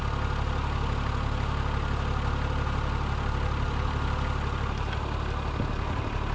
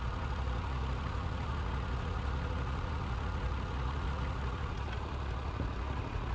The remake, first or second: second